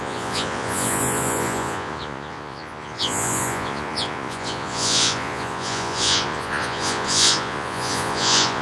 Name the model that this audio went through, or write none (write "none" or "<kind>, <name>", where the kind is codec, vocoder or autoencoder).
vocoder, Vocos